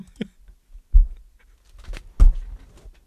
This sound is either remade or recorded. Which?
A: recorded